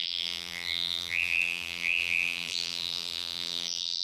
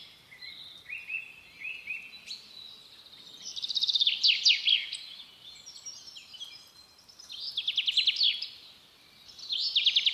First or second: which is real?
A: second